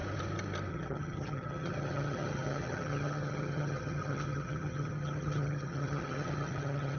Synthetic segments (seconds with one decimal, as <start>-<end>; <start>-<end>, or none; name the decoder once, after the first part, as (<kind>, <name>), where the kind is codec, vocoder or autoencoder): 0.7-7.0 (vocoder, HiFi-GAN)